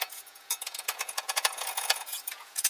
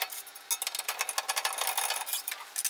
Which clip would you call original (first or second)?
second